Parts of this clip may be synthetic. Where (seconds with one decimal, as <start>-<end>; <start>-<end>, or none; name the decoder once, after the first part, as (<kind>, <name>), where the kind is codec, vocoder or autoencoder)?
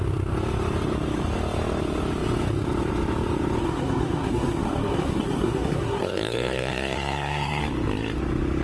3.6-7.6 (codec, SNAC)